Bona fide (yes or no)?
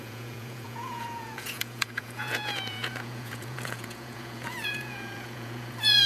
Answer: no